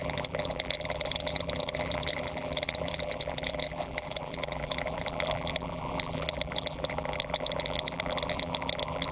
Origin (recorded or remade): remade